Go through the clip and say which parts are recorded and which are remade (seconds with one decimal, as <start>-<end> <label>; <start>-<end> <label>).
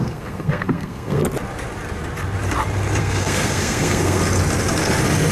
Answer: 0.0-1.2 remade; 1.2-3.0 recorded; 3.0-4.2 remade; 4.2-5.3 recorded